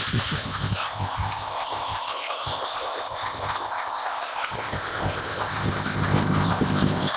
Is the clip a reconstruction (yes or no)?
yes